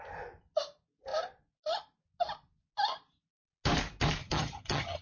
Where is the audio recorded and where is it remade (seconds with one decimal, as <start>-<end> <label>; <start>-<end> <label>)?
0.0-4.2 recorded; 4.2-5.0 remade